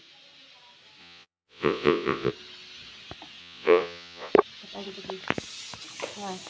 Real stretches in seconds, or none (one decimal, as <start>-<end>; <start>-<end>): 0.0-1.0; 2.3-3.4; 4.3-6.5

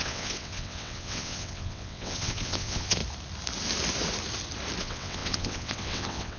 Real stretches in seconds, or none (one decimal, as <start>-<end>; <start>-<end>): 3.0-4.8

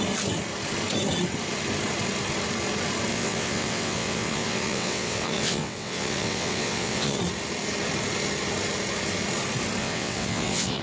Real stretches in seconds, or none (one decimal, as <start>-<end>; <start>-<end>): 0.0-3.1; 7.2-9.8

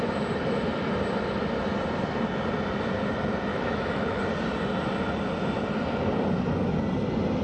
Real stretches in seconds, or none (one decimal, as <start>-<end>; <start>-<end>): 0.0-3.5; 4.2-7.4

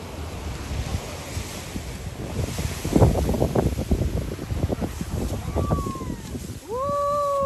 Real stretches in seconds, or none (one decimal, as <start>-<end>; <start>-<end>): 0.0-7.5

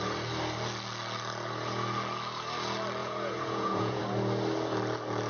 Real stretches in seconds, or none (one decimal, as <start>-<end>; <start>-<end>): 0.0-3.0; 4.0-5.3